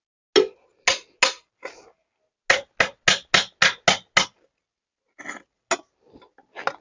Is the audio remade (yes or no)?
no